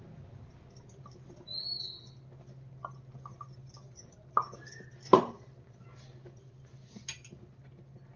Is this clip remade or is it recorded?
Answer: recorded